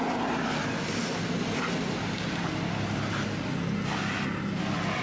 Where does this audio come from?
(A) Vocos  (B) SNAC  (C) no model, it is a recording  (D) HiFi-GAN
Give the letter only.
C